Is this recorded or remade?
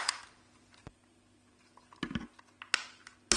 recorded